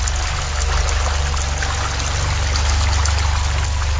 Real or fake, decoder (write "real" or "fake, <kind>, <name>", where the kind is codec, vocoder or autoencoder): real